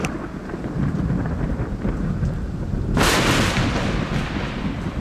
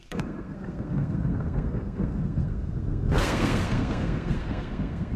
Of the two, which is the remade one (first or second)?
second